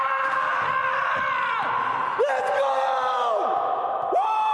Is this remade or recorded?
recorded